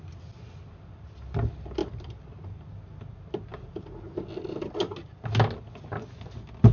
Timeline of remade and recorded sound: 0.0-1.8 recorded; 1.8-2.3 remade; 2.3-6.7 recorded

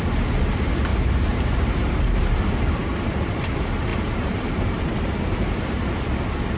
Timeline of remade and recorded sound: 0.0-0.9 recorded; 0.9-2.5 remade; 2.5-2.9 recorded; 2.9-3.5 remade; 3.5-3.9 recorded; 3.9-5.9 remade; 5.9-6.6 recorded

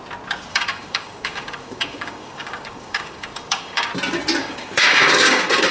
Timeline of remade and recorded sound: 0.0-0.5 recorded; 0.5-3.9 remade; 3.9-4.4 recorded; 4.4-5.7 remade

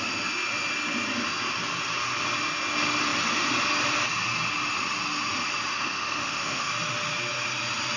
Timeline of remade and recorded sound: 0.0-5.7 recorded; 5.7-6.7 remade; 6.7-8.0 recorded

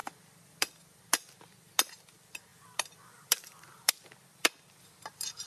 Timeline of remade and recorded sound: 0.0-1.0 remade; 1.0-2.5 recorded; 2.5-3.9 remade; 3.9-4.3 recorded; 4.3-4.9 remade; 4.9-5.5 recorded

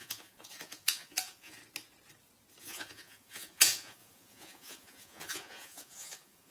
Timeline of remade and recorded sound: 0.0-1.6 remade; 1.6-2.6 recorded; 2.6-6.5 remade